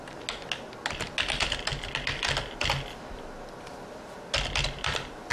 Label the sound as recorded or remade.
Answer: recorded